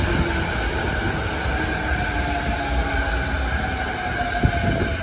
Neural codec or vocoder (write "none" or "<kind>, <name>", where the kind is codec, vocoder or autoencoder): none